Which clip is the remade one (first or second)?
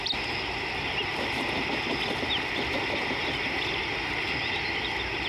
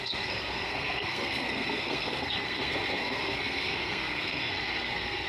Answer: second